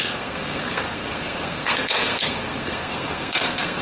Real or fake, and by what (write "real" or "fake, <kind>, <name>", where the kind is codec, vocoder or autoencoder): fake, codec, SNAC